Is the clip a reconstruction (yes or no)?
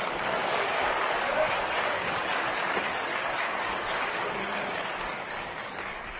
yes